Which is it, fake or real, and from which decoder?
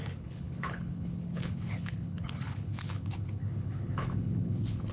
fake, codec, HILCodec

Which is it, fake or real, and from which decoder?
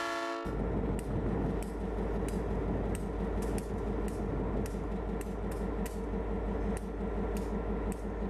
real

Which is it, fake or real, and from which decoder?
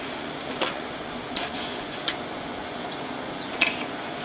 fake, vocoder, Vocos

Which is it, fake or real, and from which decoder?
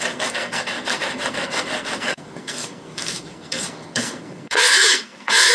fake, codec, SNAC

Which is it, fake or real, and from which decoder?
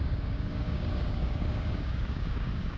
fake, codec, DAC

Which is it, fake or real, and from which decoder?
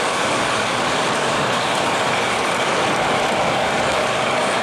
fake, codec, DAC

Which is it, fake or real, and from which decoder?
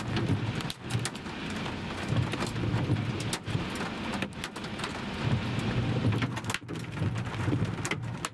real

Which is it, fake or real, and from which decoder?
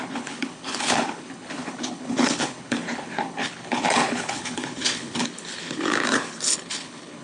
fake, codec, HILCodec